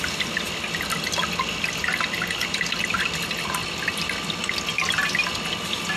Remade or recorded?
recorded